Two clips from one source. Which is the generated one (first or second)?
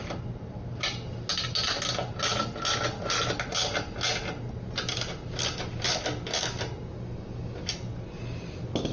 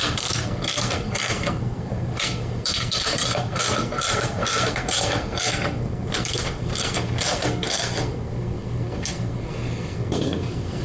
second